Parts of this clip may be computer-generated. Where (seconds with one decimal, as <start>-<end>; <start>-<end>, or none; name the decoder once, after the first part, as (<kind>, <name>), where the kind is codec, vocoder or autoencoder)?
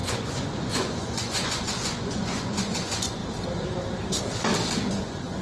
0.0-3.2 (vocoder, Vocos); 4.9-5.4